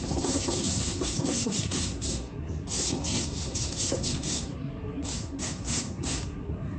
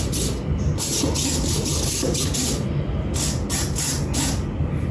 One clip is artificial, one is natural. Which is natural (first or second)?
second